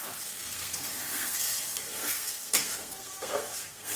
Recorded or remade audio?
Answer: remade